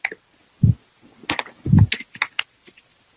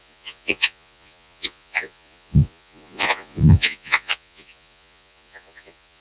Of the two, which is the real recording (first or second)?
first